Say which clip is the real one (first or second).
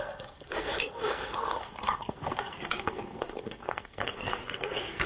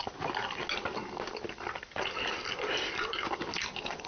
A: second